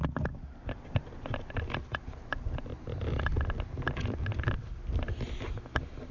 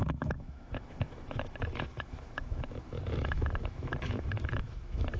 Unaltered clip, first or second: first